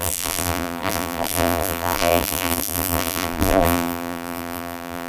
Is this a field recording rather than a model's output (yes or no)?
no